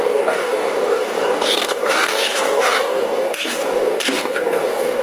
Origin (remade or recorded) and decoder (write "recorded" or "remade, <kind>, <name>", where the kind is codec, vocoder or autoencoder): remade, codec, DAC